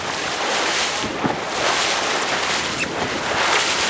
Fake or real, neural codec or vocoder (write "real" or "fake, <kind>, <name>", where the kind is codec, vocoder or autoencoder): real